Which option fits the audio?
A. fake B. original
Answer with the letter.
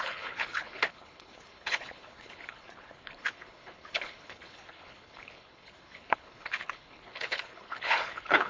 A